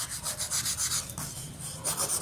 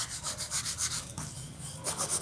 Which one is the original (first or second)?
first